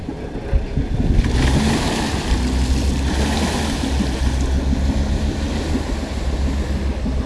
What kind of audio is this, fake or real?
real